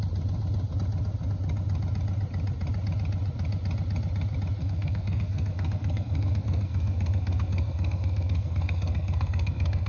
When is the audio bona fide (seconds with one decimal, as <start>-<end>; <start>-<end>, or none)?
0.0-4.6